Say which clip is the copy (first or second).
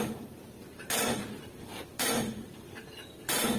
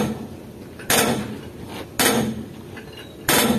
first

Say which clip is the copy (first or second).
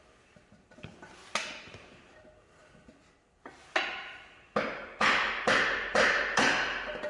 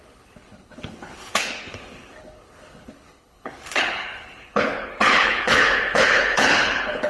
second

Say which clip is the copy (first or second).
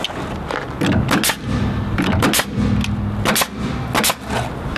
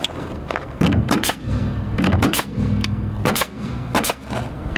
second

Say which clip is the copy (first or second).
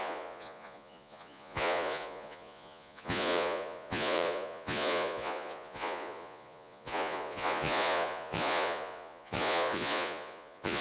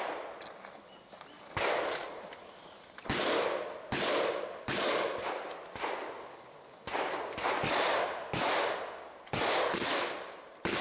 first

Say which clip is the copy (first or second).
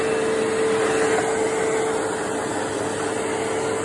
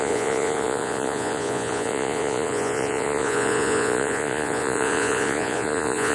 second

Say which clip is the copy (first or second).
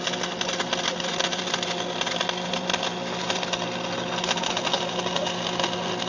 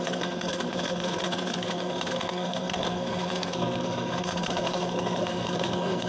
second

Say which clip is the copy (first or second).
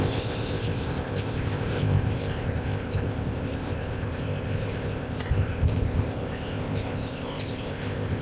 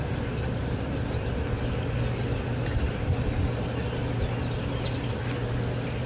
first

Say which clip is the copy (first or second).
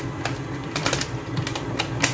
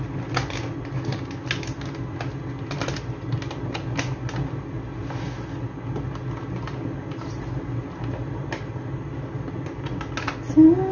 first